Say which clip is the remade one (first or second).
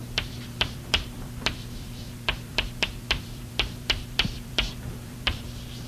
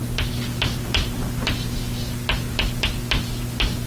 first